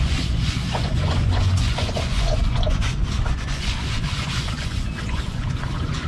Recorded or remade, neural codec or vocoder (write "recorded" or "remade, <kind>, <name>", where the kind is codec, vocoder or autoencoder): remade, vocoder, Vocos